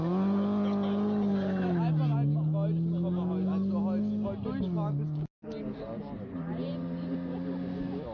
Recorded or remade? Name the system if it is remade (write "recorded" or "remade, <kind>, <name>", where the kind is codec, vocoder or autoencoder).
recorded